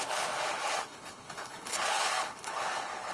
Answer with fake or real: fake